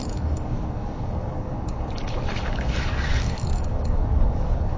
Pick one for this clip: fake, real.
fake